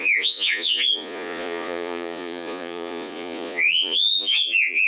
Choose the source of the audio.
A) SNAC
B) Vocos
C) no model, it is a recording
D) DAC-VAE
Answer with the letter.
B